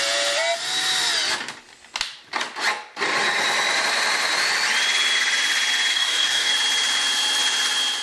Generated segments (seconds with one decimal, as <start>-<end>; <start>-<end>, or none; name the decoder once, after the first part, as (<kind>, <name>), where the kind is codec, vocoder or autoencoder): 5.9-6.5 (codec, DAC)